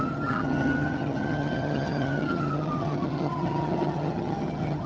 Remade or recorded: remade